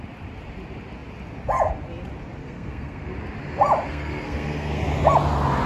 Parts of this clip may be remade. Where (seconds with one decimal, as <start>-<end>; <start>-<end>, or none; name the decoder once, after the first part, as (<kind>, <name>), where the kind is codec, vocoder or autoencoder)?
2.4-3.1 (codec, SNAC); 3.9-4.8